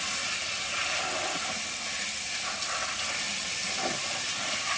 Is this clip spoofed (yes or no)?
no